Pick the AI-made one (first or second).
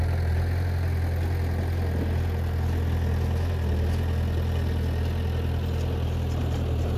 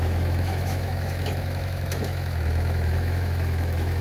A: second